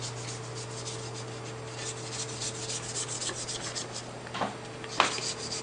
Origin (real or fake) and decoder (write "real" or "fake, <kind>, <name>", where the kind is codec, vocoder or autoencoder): real